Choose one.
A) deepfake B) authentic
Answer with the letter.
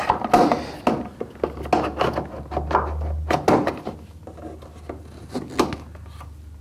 B